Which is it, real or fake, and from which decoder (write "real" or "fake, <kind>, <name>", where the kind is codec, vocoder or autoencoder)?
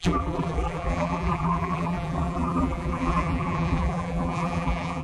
fake, vocoder, BigVGAN v2